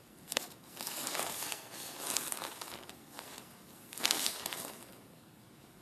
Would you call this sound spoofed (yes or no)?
yes